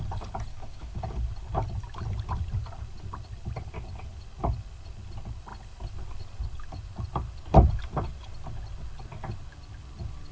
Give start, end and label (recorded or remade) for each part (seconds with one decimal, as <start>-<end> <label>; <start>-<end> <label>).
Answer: 0.0-0.5 recorded; 0.5-1.0 remade; 1.0-10.3 recorded